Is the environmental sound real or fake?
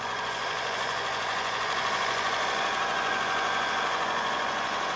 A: fake